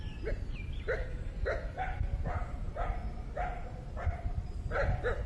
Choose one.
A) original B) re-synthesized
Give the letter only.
A